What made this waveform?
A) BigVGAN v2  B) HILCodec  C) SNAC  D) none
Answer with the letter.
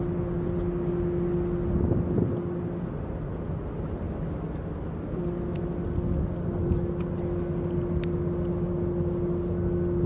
D